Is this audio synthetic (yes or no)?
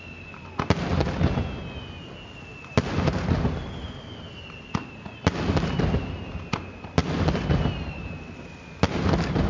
no